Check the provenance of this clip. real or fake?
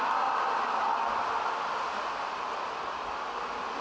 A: real